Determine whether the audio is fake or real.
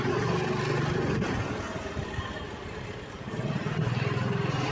real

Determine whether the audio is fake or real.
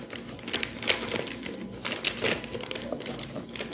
real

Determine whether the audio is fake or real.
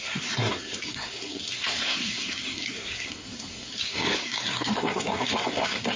fake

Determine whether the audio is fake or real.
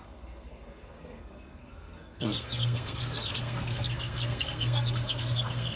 fake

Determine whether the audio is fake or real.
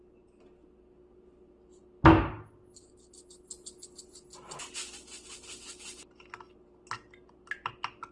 real